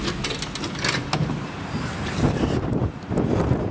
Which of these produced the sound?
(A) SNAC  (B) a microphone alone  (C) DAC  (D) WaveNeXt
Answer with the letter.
B